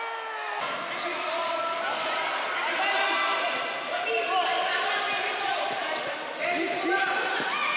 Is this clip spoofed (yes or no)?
no